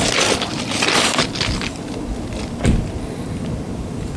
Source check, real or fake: real